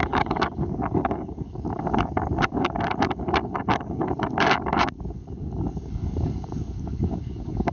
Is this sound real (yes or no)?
no